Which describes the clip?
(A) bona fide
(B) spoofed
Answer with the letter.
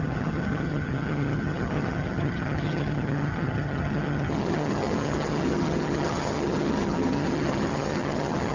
B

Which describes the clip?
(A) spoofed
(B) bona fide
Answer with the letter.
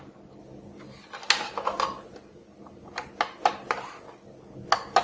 B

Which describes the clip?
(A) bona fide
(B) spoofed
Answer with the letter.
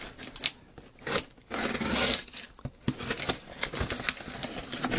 A